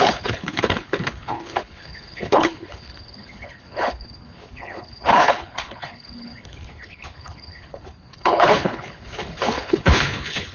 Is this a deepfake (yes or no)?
yes